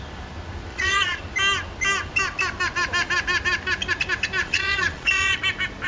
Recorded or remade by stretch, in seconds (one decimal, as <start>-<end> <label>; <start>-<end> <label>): 0.0-0.7 recorded; 0.7-1.2 remade; 1.2-4.4 recorded; 4.4-5.4 remade; 5.4-5.9 recorded